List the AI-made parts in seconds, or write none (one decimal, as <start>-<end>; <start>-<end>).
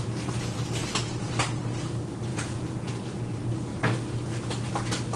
2.3-3.0